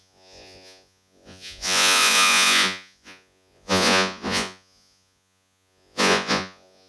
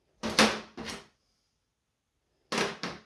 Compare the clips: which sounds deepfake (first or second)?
first